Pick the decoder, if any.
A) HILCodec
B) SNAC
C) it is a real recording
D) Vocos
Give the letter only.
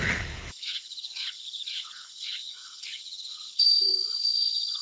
A